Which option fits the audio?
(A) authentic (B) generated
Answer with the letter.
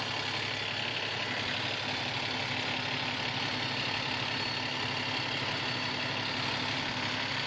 A